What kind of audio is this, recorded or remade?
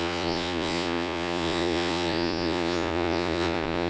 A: remade